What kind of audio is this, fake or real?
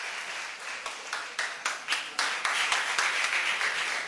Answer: real